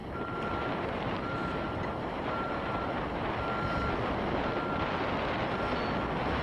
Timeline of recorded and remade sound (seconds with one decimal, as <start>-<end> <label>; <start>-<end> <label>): 0.0-3.3 remade; 3.3-6.4 recorded